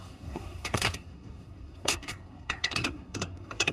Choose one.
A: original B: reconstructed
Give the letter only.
B